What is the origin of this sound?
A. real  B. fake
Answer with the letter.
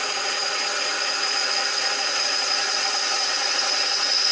B